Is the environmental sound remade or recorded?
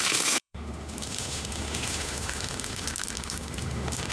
remade